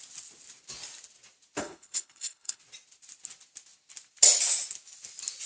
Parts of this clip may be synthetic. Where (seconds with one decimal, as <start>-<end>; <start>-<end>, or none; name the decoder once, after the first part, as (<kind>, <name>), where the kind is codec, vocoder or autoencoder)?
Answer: 1.6-2.6 (codec, HILCodec)

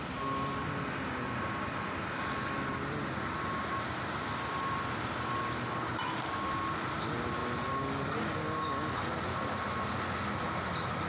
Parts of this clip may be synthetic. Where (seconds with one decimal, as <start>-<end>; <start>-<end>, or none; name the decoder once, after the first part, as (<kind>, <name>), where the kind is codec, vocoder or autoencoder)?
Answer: none

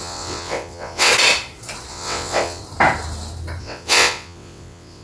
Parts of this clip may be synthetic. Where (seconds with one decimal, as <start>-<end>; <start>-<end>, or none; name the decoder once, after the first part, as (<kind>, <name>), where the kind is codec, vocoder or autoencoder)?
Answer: 0.0-1.1 (vocoder, WaveNeXt); 1.9-2.6; 3.6-5.0

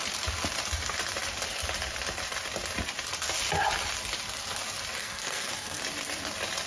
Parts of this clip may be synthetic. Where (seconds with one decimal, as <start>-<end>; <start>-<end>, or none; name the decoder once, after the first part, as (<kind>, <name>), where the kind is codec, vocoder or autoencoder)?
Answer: 5.0-5.8 (codec, SNAC)

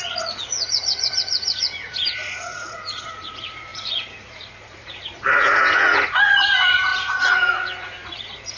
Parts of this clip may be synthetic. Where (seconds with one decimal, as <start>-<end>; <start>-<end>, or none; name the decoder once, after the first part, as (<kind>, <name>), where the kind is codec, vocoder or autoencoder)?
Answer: 0.0-8.6 (vocoder, Vocos)